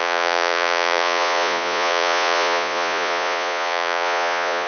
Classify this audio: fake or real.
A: fake